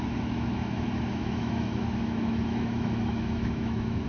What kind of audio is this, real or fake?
fake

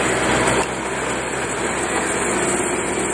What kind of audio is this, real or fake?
real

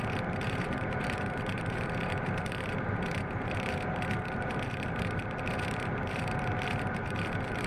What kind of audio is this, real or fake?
fake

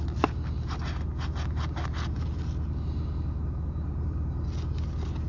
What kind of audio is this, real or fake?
real